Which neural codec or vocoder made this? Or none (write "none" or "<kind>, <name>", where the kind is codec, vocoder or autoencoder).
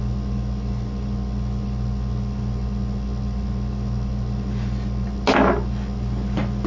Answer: none